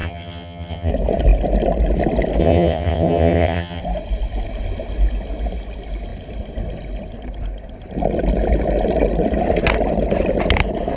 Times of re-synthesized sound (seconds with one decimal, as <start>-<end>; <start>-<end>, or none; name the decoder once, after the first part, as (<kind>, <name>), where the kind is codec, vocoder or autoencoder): 0.0-0.9 (vocoder, HiFi-GAN); 2.4-3.8